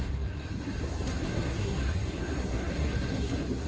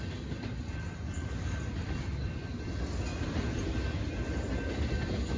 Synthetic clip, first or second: first